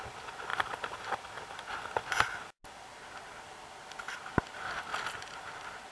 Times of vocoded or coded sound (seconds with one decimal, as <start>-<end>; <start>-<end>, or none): none